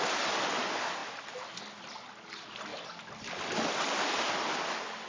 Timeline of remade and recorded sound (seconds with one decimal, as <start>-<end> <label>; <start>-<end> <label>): 0.0-1.0 recorded; 1.0-1.5 remade; 1.5-2.7 recorded; 2.7-3.3 remade; 3.3-5.1 recorded